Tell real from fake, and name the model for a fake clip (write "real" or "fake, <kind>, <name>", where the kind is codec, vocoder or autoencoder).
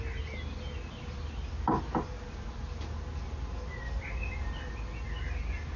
real